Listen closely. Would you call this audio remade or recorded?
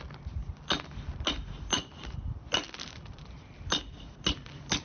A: recorded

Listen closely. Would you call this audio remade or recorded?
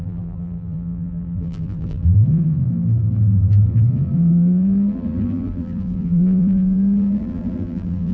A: remade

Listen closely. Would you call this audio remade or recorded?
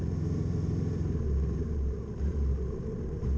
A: recorded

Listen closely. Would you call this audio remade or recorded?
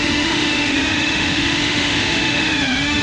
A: remade